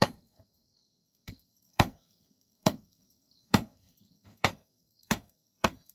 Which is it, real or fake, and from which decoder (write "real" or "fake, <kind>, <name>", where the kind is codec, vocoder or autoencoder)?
fake, codec, SNAC